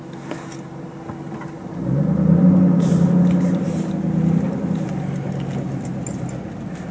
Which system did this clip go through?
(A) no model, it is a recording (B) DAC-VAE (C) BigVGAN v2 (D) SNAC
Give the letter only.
A